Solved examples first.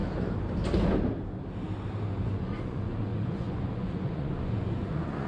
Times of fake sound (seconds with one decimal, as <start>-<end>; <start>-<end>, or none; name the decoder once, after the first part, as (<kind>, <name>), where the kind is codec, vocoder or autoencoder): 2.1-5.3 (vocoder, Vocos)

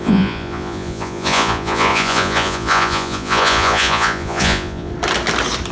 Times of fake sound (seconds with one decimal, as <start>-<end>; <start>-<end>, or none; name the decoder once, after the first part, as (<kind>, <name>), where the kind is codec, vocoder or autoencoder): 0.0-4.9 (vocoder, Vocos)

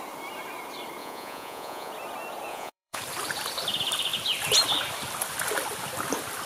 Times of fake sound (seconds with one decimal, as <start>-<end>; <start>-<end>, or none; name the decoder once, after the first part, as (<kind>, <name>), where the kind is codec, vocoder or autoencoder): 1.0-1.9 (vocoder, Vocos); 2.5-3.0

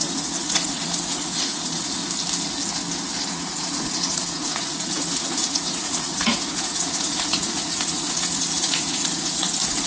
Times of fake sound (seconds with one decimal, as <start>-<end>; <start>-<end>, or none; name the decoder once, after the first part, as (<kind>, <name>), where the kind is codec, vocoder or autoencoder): 0.0-2.0 (vocoder, Vocos); 3.3-9.9

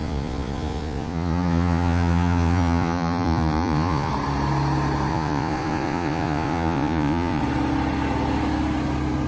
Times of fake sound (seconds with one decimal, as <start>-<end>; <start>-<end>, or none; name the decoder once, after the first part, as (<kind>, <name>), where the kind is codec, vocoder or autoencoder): 0.0-4.1 (vocoder, Vocos); 5.1-7.4

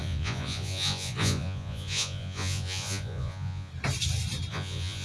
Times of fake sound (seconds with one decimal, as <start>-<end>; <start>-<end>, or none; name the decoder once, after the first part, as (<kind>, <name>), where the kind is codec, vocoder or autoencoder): 0.0-3.7 (vocoder, Vocos); 4.5-5.0

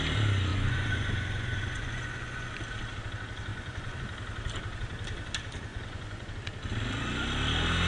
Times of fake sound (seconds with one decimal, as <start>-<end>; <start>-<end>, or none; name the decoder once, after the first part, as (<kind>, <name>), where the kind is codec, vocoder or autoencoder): 0.5-2.6 (vocoder, Vocos); 3.5-4.0; 5.7-6.3

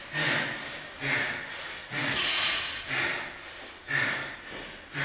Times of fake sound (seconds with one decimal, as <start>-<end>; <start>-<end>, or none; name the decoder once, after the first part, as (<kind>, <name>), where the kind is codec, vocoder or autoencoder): 1.8-2.6 (vocoder, Vocos)